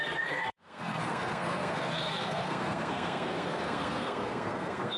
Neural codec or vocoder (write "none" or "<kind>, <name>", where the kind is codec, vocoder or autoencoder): codec, SNAC